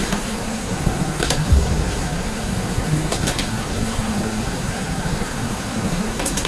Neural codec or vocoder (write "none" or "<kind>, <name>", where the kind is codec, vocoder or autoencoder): codec, SNAC